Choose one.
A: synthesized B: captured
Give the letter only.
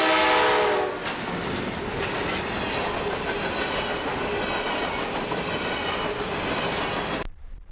B